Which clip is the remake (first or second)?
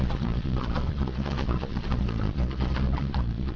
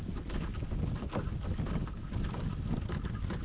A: first